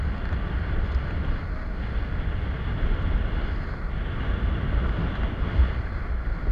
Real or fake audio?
real